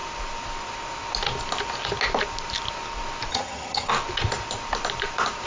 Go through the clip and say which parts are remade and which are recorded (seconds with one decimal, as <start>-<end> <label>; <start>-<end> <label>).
0.0-3.3 recorded; 3.3-3.9 remade; 3.9-5.5 recorded